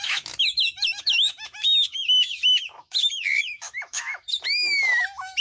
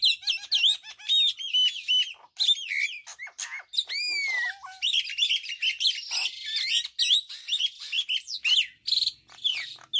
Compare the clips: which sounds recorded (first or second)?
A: second